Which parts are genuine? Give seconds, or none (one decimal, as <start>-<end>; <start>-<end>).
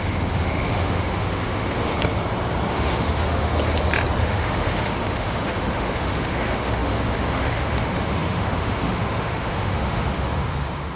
1.9-2.7; 3.5-4.2